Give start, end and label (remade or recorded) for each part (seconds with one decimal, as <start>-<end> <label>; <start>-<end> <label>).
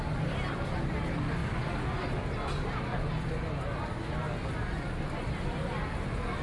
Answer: 0.0-6.4 recorded